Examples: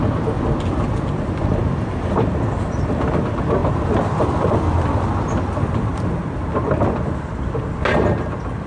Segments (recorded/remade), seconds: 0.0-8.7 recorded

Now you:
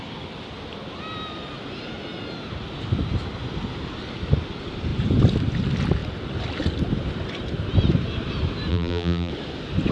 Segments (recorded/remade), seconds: 0.0-8.7 recorded; 8.7-9.3 remade; 9.3-9.9 recorded

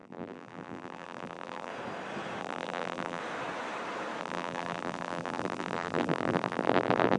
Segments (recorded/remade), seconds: 0.0-1.7 remade; 1.7-2.4 recorded; 2.4-3.2 remade; 3.2-4.2 recorded; 4.2-7.2 remade

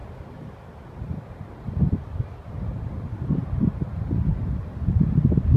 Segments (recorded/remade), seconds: 0.0-5.6 recorded

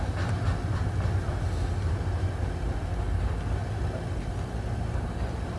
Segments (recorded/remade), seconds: 0.0-5.6 recorded

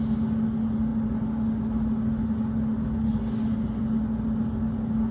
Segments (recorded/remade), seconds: 0.0-5.1 recorded

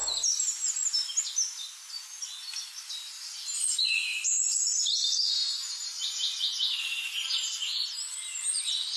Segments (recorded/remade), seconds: 0.0-0.7 remade; 0.7-6.7 recorded; 6.7-7.4 remade; 7.4-9.0 recorded